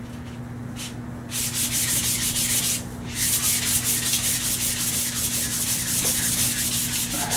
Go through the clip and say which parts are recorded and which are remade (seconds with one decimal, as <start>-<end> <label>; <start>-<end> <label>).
0.0-0.6 recorded; 0.6-1.4 remade; 1.4-7.4 recorded